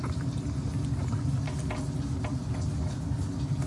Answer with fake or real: real